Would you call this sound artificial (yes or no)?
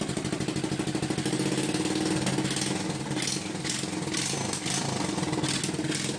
no